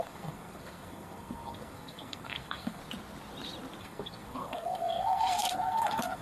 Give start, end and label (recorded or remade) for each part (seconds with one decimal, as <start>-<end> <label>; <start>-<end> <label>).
0.0-2.8 remade; 2.8-3.8 recorded; 3.8-6.2 remade